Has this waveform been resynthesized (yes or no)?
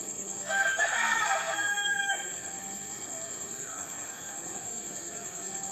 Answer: yes